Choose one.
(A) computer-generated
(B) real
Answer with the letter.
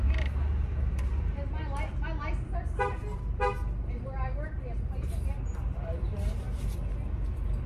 B